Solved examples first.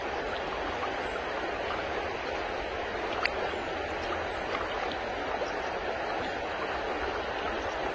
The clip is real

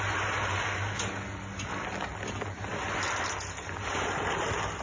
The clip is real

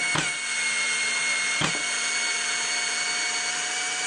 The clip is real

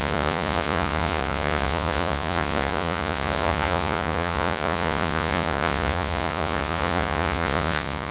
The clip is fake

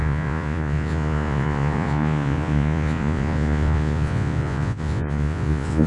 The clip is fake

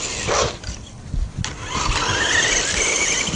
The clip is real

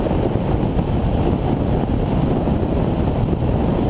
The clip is real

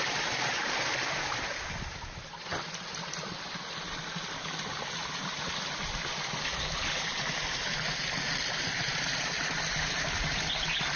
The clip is real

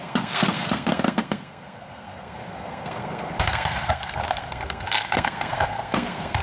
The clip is fake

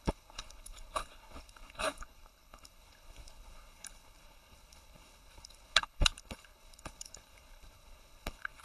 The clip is fake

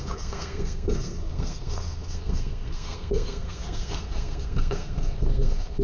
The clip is fake